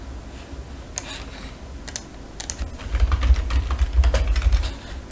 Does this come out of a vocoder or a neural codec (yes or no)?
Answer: no